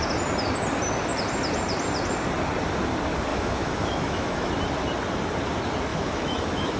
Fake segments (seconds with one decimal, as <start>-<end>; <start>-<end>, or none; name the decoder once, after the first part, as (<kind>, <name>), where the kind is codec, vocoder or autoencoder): 3.3-4.5 (autoencoder, DAC-VAE); 5.9-6.8